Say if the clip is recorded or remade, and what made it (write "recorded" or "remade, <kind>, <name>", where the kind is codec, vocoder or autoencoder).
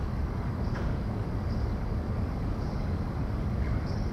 remade, codec, DAC